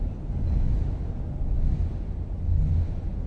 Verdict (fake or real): real